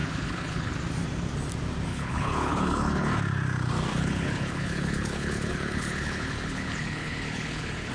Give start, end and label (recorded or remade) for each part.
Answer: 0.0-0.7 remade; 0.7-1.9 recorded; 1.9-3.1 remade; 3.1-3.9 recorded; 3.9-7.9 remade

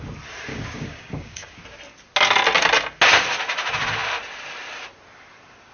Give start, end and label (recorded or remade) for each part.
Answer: 0.0-0.5 recorded; 0.5-1.6 remade; 1.6-5.7 recorded

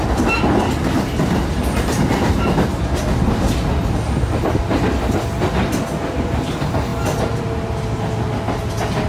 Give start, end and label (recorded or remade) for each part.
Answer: 0.0-9.1 recorded

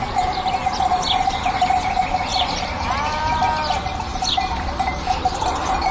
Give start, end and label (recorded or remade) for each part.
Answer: 0.0-2.3 recorded; 2.3-3.5 remade; 3.5-4.1 recorded; 4.1-5.9 remade

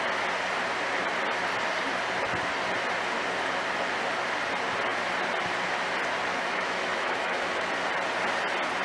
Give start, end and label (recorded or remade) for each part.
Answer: 0.0-6.3 recorded; 6.3-7.7 remade; 7.7-8.8 recorded